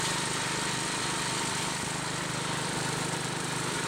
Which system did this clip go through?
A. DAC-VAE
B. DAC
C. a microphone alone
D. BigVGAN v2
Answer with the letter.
D